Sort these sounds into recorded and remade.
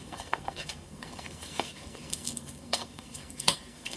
remade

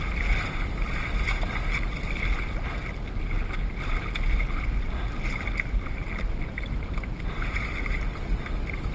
recorded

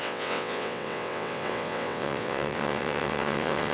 remade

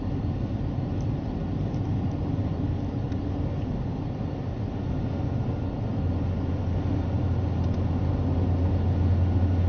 recorded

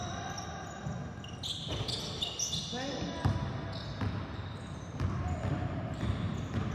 recorded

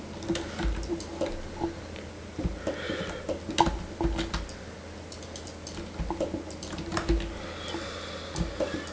recorded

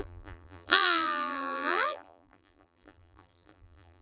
remade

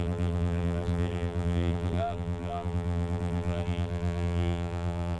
remade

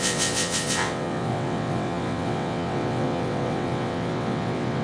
remade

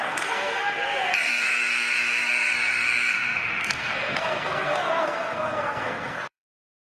remade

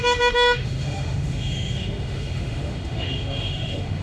remade